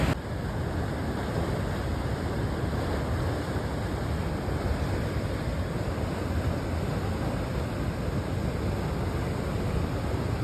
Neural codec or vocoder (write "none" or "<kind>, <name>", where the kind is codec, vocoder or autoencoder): none